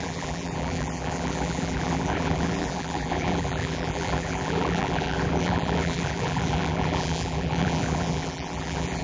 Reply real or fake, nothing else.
fake